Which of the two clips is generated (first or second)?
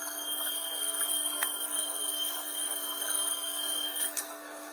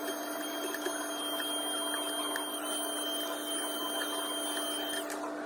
first